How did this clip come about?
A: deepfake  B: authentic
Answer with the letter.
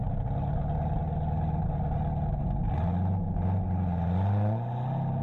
B